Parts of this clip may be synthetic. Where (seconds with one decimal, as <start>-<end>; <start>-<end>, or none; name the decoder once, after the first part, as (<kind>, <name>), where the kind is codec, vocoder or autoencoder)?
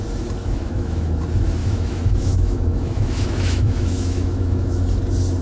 0.4-1.2 (autoencoder, DAC-VAE); 1.6-4.8